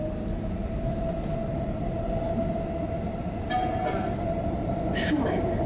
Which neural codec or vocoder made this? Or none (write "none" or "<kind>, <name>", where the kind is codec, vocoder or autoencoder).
none